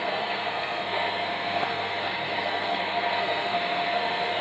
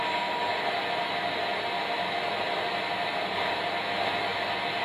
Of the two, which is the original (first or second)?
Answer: second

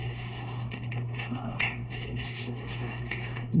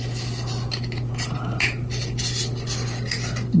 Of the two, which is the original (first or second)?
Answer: second